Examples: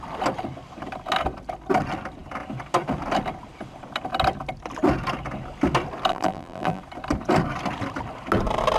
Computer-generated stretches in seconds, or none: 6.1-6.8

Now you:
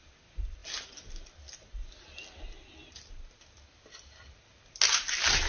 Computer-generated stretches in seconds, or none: none

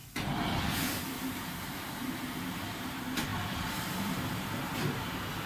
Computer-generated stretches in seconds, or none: 1.1-5.5

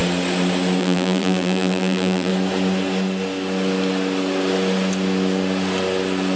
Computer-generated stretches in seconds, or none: 0.8-2.3

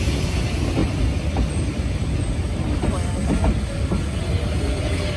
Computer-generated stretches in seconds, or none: none